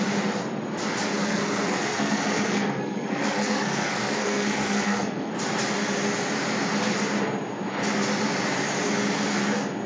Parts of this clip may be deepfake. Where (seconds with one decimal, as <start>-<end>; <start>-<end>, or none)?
1.2-5.3